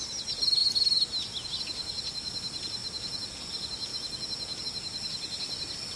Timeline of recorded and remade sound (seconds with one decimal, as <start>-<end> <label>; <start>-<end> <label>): 0.0-6.0 recorded